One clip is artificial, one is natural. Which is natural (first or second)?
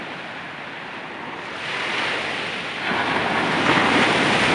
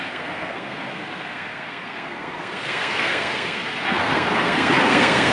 first